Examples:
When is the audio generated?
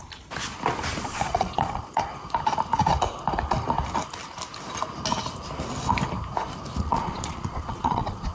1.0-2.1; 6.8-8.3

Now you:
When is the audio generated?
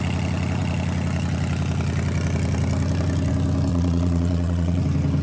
3.7-4.8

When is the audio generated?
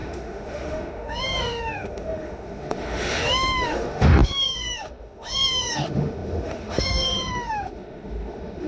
0.0-8.7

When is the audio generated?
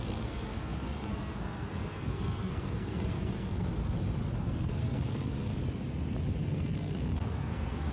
0.0-3.7; 4.4-5.5; 6.3-7.9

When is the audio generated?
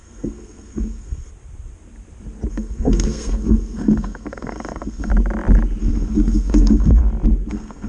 0.0-1.3; 2.5-5.1; 5.8-7.0; 7.5-7.9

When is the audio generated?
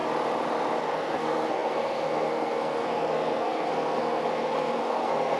0.8-5.4